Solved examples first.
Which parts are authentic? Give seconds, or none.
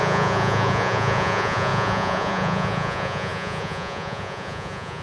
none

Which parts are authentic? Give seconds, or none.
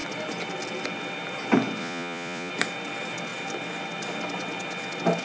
0.0-1.8; 2.5-5.2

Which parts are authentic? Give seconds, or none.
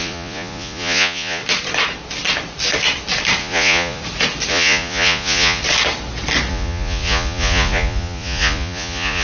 1.4-3.4; 4.0-4.5; 5.6-6.5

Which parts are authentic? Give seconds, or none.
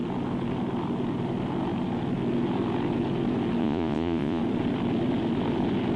0.0-3.6; 4.4-6.0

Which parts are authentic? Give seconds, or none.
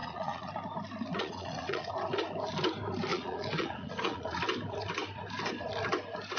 0.5-1.1; 1.9-3.1; 4.4-6.4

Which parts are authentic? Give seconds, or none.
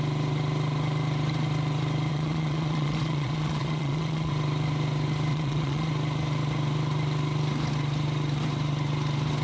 0.0-2.1; 4.3-5.3; 5.9-9.4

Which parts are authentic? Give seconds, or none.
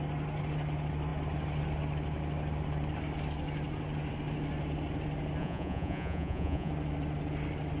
0.0-5.4; 6.7-7.8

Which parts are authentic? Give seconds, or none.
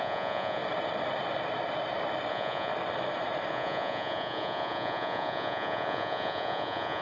0.6-2.3; 2.7-3.5